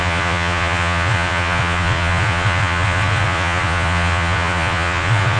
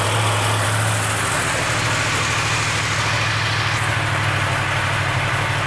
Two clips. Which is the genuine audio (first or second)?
second